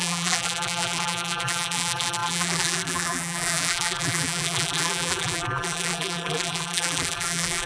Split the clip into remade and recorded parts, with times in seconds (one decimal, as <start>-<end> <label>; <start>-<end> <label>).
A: 0.0-7.7 remade